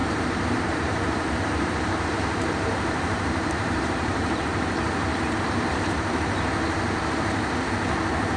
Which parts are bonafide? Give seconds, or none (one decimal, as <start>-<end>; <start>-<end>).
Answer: 4.4-5.1; 7.7-8.4